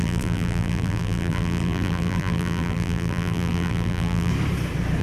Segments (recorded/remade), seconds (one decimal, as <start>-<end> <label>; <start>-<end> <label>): 0.0-4.3 remade; 4.3-5.0 recorded